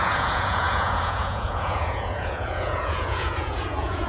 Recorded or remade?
remade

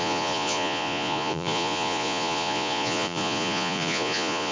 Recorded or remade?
remade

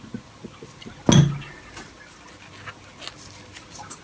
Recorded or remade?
recorded